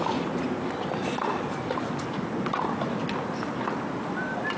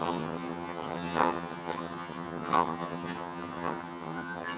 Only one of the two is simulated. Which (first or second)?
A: second